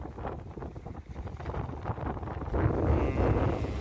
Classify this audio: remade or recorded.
recorded